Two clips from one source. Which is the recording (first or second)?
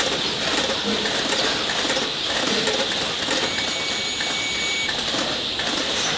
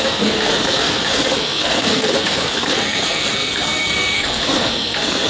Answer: first